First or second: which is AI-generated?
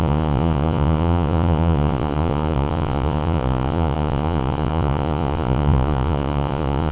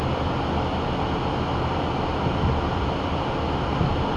first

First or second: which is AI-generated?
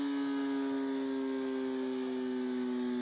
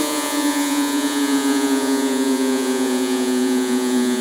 second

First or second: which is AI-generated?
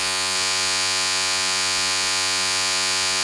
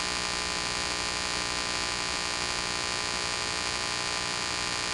first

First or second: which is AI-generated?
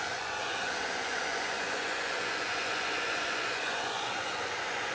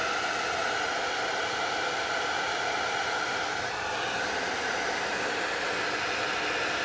first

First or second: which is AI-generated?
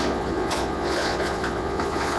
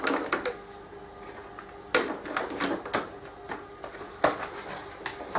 first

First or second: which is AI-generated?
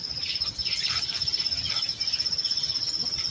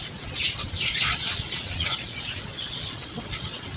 second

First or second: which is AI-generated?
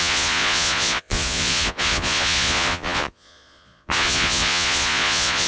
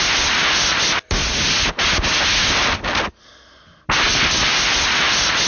first